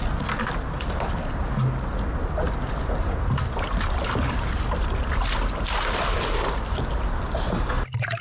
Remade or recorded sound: recorded